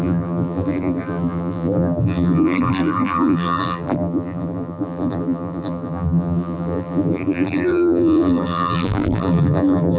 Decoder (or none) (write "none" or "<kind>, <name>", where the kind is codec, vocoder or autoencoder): vocoder, BigVGAN v2